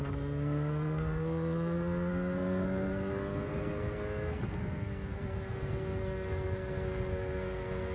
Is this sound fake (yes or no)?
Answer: yes